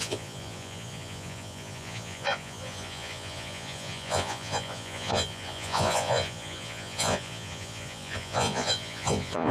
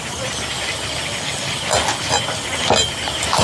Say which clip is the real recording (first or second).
second